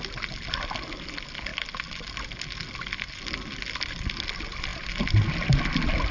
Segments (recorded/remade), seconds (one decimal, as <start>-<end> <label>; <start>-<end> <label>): 0.0-6.1 recorded